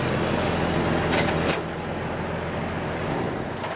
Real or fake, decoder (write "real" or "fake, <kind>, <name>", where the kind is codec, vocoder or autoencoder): real